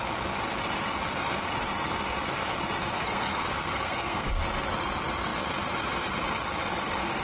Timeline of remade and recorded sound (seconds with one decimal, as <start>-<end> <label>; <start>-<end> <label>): 0.0-2.8 recorded; 2.8-4.4 remade; 4.4-7.2 recorded